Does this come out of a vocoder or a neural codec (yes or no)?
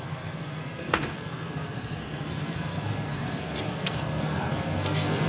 yes